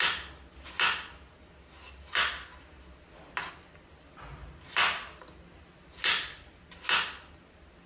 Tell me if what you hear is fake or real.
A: real